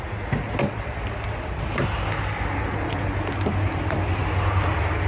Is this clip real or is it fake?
real